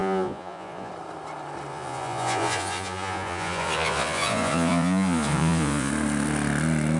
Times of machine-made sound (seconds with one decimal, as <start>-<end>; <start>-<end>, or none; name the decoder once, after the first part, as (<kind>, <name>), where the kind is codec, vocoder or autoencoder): 0.0-0.9 (vocoder, Vocos); 1.7-5.9